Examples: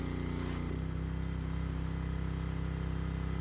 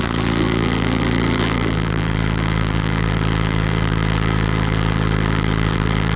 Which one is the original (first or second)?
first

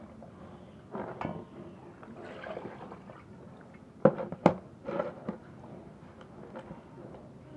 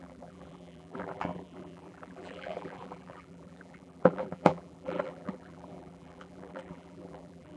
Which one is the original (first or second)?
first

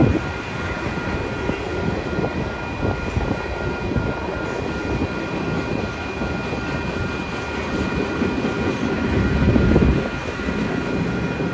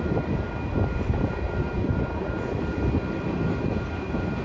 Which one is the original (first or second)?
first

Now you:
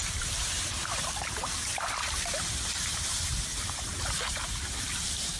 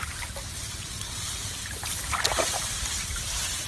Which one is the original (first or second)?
second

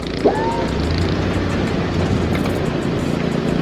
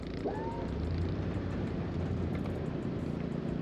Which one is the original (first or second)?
first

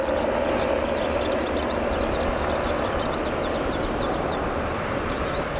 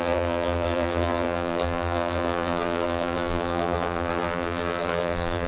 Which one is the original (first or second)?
first